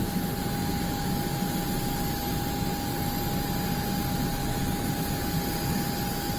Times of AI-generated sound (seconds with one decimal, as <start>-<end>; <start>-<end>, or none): 0.6-1.2; 4.4-4.9